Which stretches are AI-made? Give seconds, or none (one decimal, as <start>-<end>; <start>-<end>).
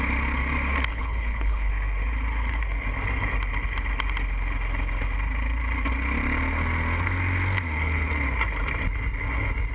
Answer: 0.9-1.7